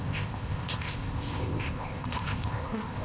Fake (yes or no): yes